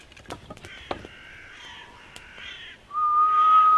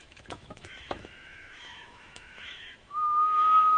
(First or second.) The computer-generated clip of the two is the second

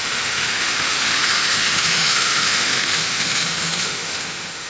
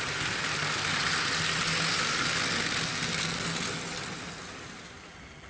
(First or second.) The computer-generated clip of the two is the first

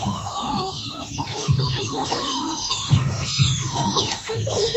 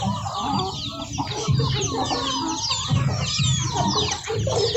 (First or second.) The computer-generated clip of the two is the first